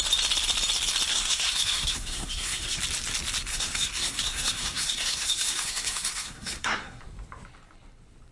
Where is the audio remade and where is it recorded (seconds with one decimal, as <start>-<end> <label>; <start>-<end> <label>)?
0.0-1.1 recorded; 1.1-2.8 remade; 2.8-3.5 recorded; 3.5-7.0 remade; 7.0-8.3 recorded